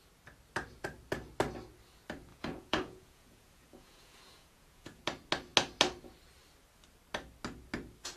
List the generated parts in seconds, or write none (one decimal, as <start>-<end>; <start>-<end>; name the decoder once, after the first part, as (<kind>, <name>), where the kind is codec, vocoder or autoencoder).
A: 2.3-5.0 (vocoder, Vocos)